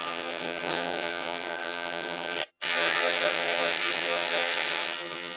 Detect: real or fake fake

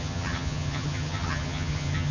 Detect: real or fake fake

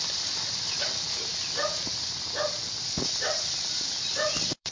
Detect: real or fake fake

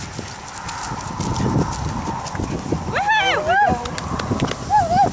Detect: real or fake real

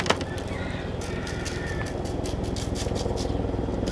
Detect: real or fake real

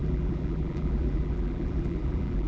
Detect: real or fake fake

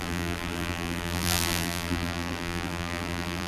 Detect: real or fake fake